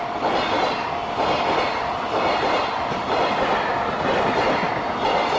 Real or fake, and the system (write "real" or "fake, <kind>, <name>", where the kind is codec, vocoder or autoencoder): real